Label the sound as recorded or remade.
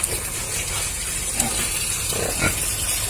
recorded